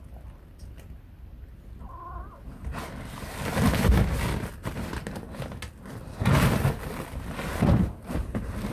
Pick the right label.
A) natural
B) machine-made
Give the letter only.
A